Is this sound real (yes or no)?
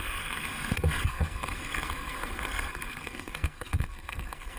no